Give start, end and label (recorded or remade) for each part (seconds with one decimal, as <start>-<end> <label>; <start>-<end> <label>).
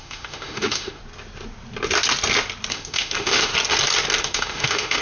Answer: 0.0-1.0 remade; 1.0-2.7 recorded; 2.7-3.5 remade; 3.5-4.2 recorded; 4.2-5.0 remade